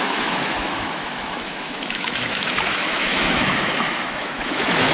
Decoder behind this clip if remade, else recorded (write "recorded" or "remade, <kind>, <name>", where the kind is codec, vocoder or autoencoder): remade, autoencoder, DAC-VAE